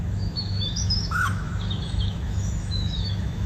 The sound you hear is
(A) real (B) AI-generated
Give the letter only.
B